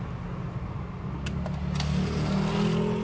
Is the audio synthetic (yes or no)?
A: no